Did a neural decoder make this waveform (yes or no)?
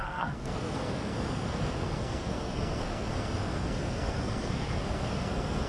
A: yes